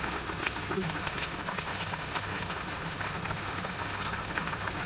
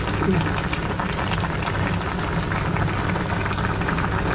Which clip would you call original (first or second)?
second